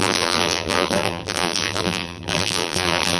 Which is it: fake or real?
fake